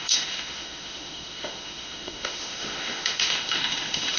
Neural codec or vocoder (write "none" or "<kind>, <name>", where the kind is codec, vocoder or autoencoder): autoencoder, DAC-VAE